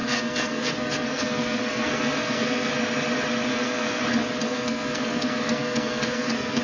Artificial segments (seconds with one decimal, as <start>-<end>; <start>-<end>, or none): 0.0-2.7; 3.5-4.0; 4.4-6.6